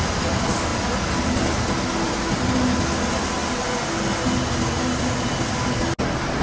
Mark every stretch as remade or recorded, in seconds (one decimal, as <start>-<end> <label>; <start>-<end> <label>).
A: 0.0-6.4 recorded